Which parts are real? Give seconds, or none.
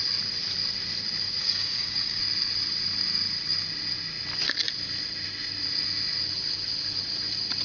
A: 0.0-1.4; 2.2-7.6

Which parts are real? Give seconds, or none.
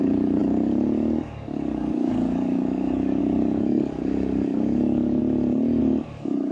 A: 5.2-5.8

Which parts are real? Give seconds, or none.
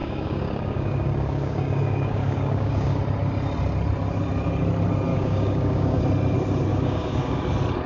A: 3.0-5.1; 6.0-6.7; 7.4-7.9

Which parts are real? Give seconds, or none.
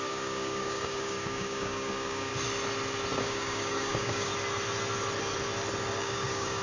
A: 2.3-3.2; 4.3-6.0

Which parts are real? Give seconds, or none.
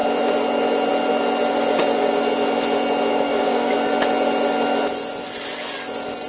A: 0.0-3.1; 3.7-6.3